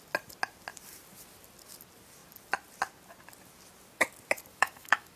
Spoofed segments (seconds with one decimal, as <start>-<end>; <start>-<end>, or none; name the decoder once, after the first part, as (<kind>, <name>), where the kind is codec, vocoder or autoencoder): 4.5-5.2 (autoencoder, DAC-VAE)